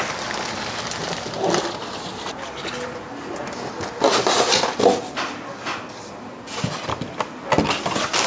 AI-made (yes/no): no